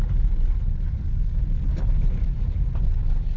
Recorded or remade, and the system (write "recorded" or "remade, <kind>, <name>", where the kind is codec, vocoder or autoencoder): recorded